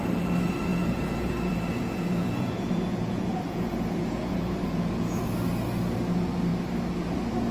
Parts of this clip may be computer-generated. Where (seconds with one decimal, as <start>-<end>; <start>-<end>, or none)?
0.7-5.2